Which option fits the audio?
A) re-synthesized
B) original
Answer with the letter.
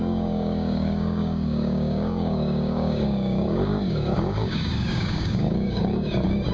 A